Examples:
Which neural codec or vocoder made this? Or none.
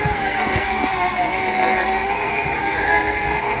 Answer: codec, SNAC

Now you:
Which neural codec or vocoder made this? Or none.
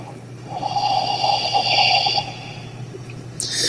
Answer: none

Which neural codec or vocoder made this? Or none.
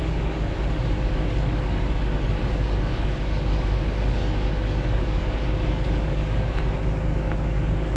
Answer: codec, DAC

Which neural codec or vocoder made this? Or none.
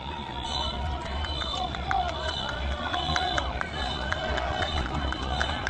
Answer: vocoder, Vocos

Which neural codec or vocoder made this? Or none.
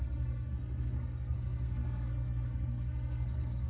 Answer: codec, SNAC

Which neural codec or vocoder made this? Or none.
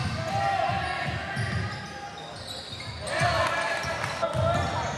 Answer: none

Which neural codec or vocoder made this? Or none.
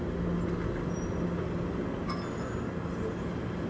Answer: none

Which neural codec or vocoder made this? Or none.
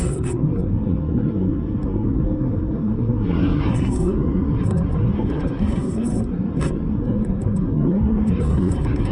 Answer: codec, SNAC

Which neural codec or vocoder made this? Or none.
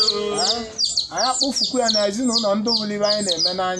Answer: none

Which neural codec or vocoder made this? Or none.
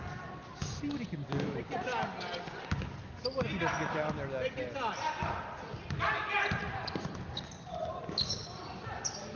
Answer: none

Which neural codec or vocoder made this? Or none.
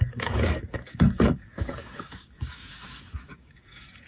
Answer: codec, DAC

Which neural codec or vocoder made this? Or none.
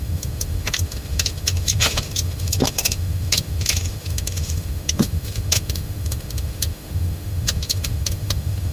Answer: autoencoder, DAC-VAE